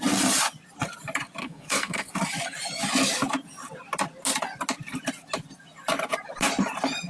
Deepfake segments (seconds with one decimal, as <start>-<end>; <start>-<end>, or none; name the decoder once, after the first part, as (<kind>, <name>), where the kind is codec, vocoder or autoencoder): 1.4-2.1 (codec, SNAC)